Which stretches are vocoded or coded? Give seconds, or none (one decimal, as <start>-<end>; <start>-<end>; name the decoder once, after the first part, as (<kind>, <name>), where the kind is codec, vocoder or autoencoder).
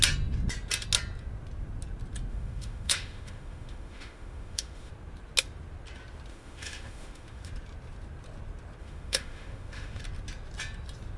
2.3-4.9 (autoencoder, DAC-VAE); 6.3-7.5; 8.8-10.0